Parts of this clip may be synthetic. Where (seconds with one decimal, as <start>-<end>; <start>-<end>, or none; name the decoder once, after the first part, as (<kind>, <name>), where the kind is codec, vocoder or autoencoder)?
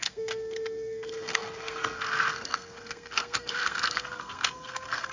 0.0-5.1 (codec, SNAC)